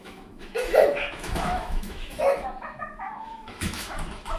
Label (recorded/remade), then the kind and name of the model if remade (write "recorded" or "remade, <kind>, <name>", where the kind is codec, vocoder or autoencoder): remade, autoencoder, DAC-VAE